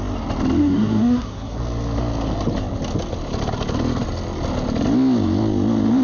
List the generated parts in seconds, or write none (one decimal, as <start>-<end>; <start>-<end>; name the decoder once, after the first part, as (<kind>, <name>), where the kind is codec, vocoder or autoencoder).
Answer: 0.6-1.6 (codec, SNAC)